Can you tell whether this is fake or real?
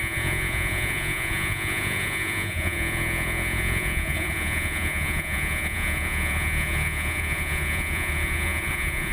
fake